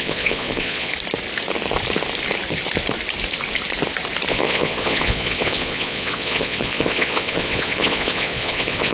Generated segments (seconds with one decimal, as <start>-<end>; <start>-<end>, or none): 0.0-0.9; 4.3-8.9